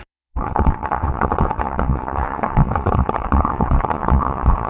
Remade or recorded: remade